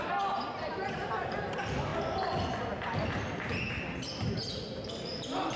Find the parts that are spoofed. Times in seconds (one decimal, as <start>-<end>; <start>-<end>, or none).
none